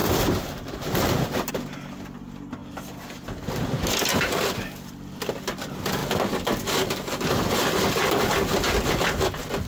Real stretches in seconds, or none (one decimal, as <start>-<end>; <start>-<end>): 1.5-9.7